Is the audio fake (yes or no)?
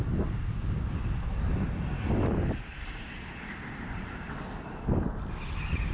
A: no